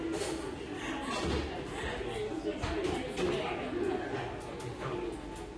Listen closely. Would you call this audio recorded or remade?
recorded